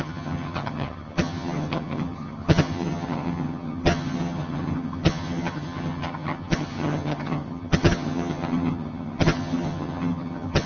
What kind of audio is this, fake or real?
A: fake